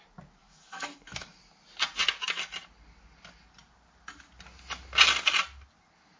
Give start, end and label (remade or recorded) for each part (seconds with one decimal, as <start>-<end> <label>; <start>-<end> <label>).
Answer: 0.0-0.4 recorded; 0.4-1.4 remade; 1.4-6.2 recorded